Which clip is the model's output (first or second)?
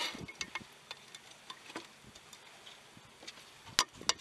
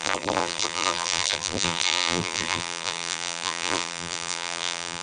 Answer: second